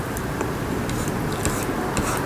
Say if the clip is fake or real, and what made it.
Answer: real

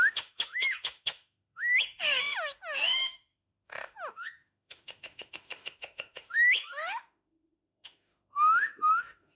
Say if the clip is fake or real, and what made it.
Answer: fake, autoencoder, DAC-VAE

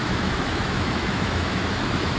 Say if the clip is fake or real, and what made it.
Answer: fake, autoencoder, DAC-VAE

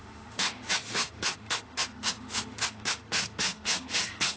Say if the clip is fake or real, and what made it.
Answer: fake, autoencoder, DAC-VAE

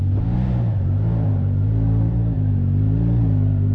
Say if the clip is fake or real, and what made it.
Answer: real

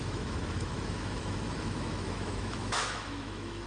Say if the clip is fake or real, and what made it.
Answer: fake, autoencoder, DAC-VAE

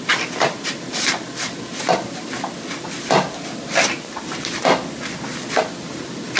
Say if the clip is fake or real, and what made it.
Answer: real